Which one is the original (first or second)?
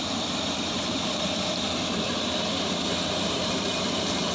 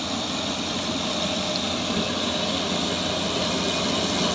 second